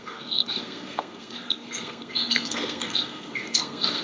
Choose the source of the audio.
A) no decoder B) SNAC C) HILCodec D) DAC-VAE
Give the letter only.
B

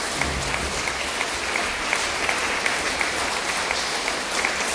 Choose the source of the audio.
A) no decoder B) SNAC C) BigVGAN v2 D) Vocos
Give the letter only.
A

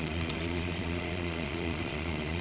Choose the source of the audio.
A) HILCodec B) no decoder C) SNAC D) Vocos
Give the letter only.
D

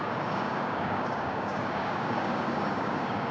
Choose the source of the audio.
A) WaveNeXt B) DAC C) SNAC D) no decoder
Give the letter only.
B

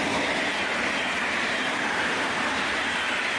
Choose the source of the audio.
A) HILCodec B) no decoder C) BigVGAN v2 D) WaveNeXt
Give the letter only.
B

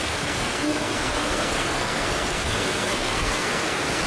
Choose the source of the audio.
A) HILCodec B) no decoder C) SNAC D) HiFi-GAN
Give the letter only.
C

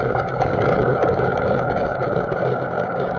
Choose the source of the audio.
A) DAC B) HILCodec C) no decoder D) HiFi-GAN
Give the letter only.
A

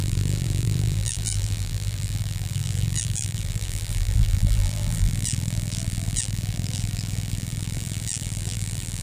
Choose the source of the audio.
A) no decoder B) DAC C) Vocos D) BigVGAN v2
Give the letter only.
D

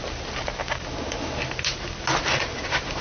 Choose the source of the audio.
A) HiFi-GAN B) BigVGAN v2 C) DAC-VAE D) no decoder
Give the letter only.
D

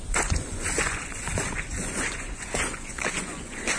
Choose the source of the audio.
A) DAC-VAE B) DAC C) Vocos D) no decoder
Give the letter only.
C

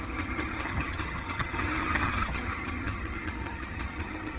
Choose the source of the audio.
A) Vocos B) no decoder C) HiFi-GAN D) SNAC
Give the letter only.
C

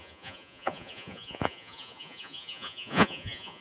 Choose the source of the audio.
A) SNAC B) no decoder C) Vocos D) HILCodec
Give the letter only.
C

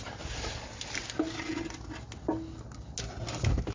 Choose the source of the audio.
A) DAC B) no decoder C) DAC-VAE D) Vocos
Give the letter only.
B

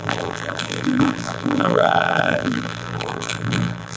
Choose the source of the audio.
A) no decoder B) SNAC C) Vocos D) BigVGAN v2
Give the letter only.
D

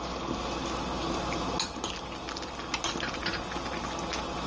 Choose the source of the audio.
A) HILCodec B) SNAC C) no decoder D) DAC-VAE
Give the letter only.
C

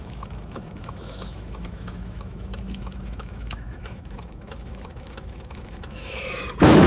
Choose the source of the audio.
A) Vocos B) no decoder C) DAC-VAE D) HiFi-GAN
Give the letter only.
C